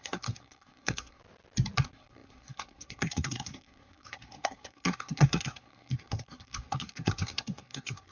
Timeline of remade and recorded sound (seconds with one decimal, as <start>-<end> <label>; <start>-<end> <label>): 0.0-1.2 remade; 1.2-1.8 recorded; 1.8-8.1 remade